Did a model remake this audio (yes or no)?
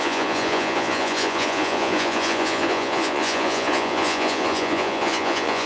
yes